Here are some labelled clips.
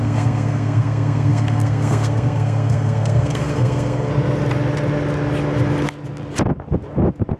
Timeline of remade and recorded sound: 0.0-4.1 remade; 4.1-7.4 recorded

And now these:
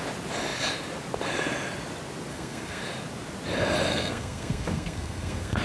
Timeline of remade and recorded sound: 0.0-2.3 recorded; 2.3-2.8 remade; 2.8-3.9 recorded; 3.9-5.6 remade

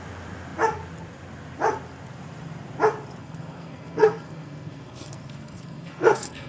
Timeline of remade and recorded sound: 0.0-3.2 recorded; 3.2-6.5 remade

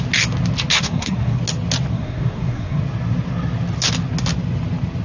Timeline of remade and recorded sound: 0.0-0.7 recorded; 0.7-1.4 remade; 1.4-1.9 recorded; 1.9-2.8 remade; 2.8-5.0 recorded